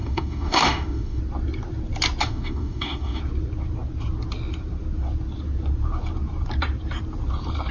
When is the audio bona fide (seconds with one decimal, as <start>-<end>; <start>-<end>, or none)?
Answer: 1.2-2.2; 3.2-7.7

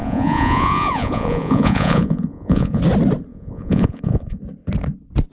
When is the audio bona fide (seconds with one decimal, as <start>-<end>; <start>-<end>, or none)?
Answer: 2.8-3.3; 4.4-5.3

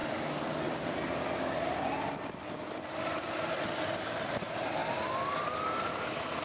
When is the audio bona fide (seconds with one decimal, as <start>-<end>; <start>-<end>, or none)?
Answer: 0.0-3.8; 4.8-6.4

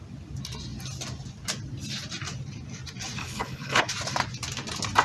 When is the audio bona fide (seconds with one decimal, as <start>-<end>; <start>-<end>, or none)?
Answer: 0.0-3.2; 3.8-5.0

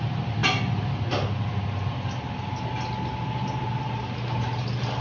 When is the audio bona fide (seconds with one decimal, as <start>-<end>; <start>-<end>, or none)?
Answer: 0.0-5.0